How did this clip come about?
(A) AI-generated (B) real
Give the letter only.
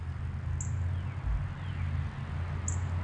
B